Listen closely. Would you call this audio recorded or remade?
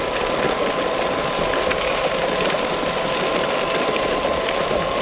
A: recorded